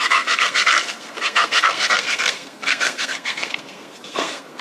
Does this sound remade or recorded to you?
remade